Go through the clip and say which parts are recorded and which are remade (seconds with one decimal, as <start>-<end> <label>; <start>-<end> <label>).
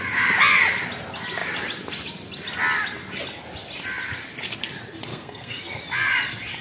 0.0-5.1 recorded; 5.1-5.8 remade; 5.8-6.6 recorded